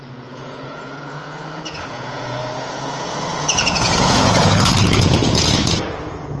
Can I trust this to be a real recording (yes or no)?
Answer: no